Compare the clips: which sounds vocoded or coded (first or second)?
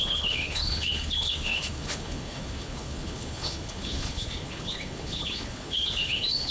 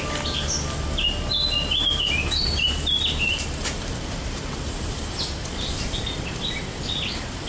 first